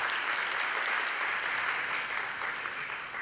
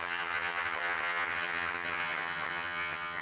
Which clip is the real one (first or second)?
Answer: first